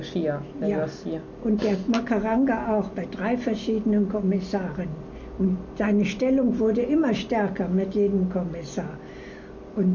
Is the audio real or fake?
real